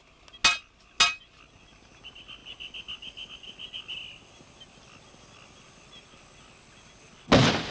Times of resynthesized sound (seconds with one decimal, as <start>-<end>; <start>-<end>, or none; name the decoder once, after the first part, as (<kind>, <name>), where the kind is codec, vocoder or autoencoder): none